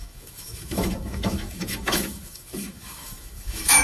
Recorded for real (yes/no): no